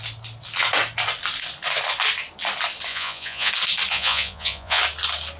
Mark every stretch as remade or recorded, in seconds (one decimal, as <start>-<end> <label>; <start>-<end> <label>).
0.0-2.9 recorded; 2.9-3.5 remade; 3.5-3.9 recorded; 3.9-4.8 remade; 4.8-5.4 recorded